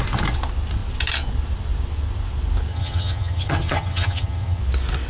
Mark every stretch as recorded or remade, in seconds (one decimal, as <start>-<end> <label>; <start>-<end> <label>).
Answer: 0.0-2.7 recorded; 2.7-4.6 remade; 4.6-5.1 recorded

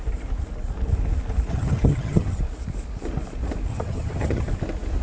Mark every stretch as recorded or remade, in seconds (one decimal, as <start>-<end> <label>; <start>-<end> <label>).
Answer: 0.0-1.5 recorded; 1.5-2.4 remade; 2.4-3.7 recorded; 3.7-4.5 remade; 4.5-5.0 recorded

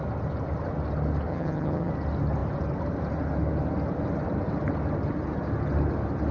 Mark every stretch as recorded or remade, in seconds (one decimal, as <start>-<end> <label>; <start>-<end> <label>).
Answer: 0.0-1.3 recorded; 1.3-1.9 remade; 1.9-6.3 recorded